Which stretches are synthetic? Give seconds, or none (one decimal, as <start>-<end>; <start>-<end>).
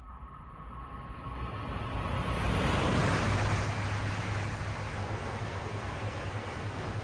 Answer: 4.9-7.0